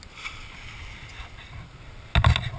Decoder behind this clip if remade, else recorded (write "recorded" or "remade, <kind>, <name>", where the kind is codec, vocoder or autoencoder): recorded